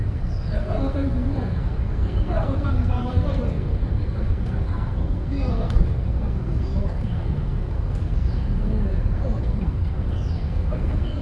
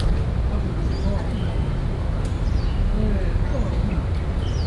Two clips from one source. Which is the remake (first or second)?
first